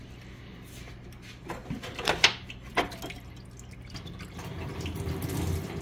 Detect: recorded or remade recorded